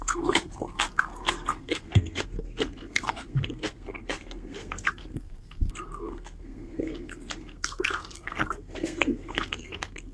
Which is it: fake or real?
fake